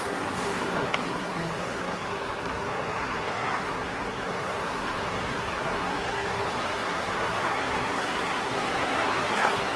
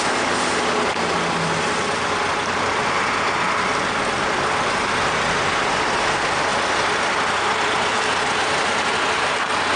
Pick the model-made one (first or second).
first